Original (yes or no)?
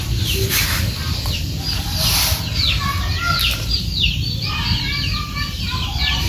yes